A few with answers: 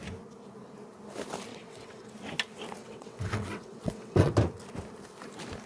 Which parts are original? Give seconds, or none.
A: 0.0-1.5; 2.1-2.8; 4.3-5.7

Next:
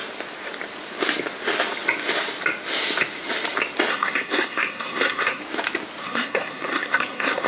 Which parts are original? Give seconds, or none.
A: 0.0-3.9; 5.4-6.0

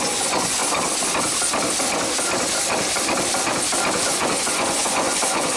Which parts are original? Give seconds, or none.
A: 0.6-4.0

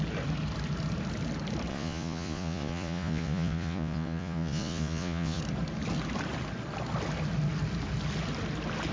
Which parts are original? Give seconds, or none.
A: 0.0-1.7; 5.4-8.9

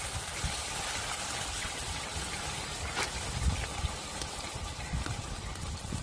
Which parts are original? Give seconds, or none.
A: 0.0-1.6; 2.3-6.0

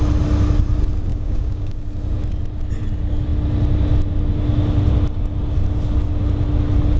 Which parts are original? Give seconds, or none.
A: 0.0-1.1; 1.8-7.0